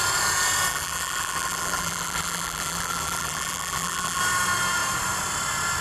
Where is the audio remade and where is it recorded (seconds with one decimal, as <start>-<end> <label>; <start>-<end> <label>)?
0.0-0.7 recorded; 0.7-4.2 remade; 4.2-5.8 recorded